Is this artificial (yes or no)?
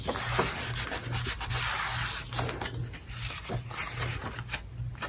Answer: no